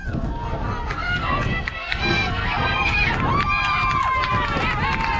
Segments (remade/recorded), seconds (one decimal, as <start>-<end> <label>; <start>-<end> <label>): 0.0-3.1 remade; 3.1-5.2 recorded